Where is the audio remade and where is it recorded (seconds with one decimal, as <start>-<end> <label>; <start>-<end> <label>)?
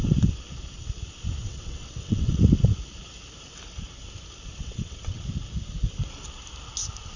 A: 0.0-1.4 recorded; 1.4-2.4 remade; 2.4-4.6 recorded; 4.6-5.2 remade; 5.2-7.2 recorded